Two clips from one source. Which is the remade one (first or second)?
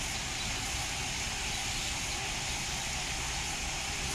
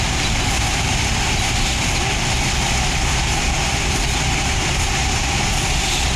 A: second